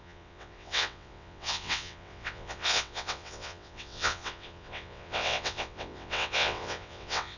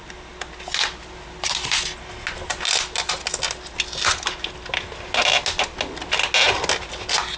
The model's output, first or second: first